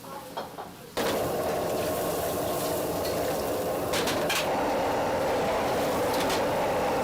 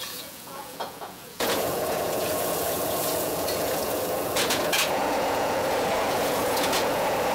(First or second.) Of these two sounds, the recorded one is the first